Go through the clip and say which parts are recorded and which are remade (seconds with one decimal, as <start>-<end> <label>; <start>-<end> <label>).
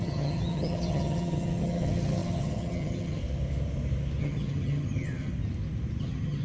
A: 0.0-3.2 remade; 3.2-4.2 recorded; 4.2-5.3 remade; 5.3-6.0 recorded; 6.0-6.4 remade